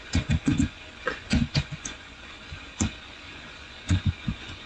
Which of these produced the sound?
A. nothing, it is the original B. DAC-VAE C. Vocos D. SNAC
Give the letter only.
C